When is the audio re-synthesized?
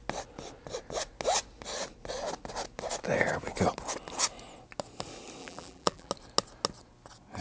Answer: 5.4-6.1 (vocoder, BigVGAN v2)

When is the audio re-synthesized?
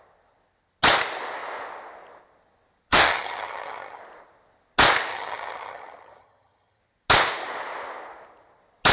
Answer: 2.9-4.0 (vocoder, HiFi-GAN); 5.1-6.8